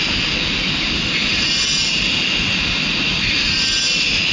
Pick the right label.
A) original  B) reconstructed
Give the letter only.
A